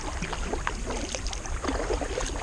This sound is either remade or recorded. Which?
recorded